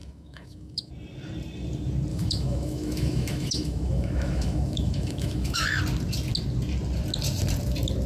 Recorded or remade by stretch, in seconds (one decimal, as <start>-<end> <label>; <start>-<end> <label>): 0.0-0.9 remade; 0.9-2.1 recorded; 2.1-5.8 remade; 5.8-8.1 recorded